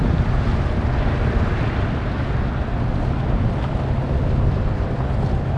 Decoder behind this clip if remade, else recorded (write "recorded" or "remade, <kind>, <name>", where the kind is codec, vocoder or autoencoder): recorded